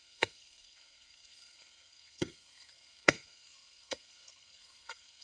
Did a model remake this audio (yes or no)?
yes